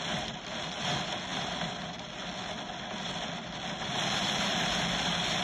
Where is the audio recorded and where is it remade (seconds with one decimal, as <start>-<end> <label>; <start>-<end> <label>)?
0.0-5.4 recorded